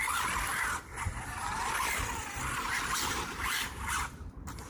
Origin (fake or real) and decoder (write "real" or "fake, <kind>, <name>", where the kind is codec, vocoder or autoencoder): real